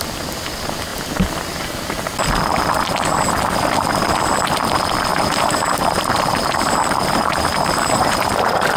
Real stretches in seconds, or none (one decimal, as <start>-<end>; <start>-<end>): 0.0-5.1